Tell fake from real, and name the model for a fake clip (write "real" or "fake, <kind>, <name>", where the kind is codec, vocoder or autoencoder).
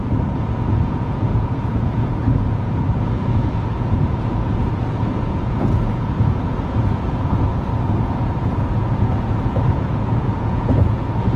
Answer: fake, vocoder, Vocos